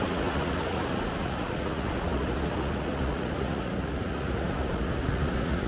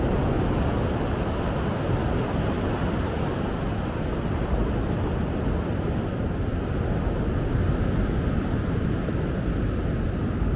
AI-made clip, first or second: first